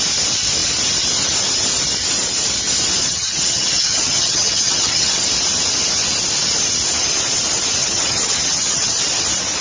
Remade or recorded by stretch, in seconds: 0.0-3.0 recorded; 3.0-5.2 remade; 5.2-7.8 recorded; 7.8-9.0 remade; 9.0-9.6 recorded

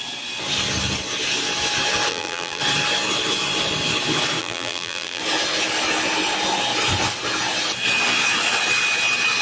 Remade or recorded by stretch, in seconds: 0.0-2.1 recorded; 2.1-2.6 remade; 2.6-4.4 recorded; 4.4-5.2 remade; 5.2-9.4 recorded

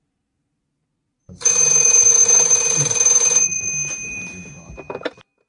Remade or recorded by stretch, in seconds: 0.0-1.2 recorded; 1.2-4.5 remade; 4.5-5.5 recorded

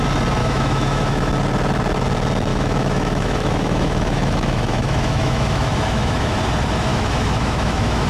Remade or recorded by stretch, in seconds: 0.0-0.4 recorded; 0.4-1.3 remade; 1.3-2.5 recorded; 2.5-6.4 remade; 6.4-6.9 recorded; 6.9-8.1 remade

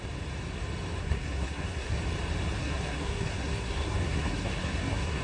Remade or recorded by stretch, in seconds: 0.0-1.0 recorded; 1.0-2.0 remade; 2.0-2.6 recorded; 2.6-5.2 remade

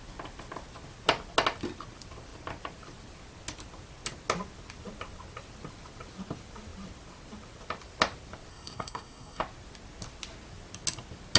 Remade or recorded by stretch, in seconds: 0.0-8.5 recorded; 8.5-9.4 remade; 9.4-11.4 recorded